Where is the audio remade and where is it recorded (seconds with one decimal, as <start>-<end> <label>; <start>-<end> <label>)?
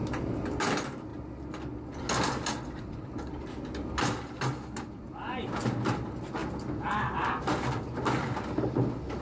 0.0-9.2 recorded